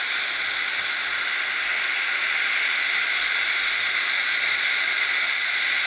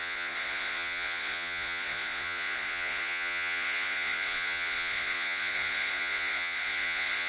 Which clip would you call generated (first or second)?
second